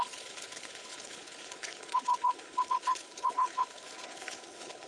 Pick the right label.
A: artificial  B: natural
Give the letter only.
A